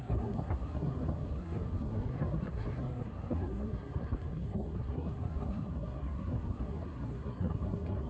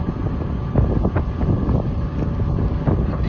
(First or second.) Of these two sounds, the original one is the second